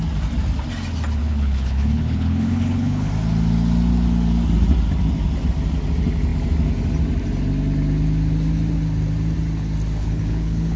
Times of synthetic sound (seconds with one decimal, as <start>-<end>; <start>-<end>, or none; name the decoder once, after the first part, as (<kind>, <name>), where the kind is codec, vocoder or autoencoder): 1.2-3.1 (codec, HILCodec); 10.0-10.8